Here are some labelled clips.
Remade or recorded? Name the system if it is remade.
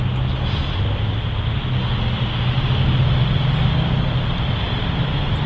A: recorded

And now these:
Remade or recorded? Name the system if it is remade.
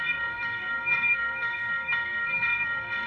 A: remade, codec, SNAC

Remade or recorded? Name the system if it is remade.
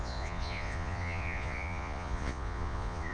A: remade, vocoder, Vocos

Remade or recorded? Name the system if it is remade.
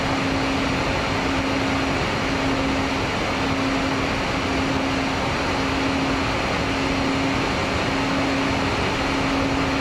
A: recorded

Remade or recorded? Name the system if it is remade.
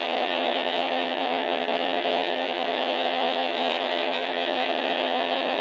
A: remade, vocoder, HiFi-GAN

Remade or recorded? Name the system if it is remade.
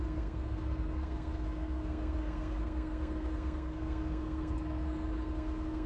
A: remade, codec, SNAC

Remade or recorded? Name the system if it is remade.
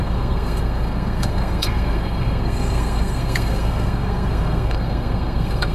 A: remade, codec, SNAC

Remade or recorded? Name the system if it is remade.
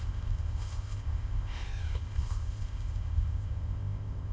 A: remade, codec, ZipCodec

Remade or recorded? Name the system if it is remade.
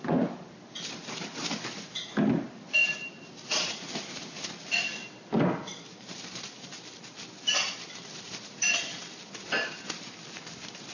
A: recorded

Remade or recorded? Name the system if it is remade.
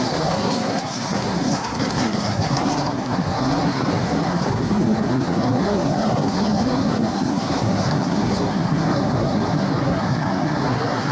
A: remade, codec, SNAC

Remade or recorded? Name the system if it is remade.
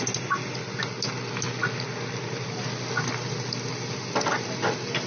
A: recorded